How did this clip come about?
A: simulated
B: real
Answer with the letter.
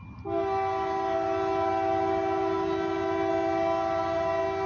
B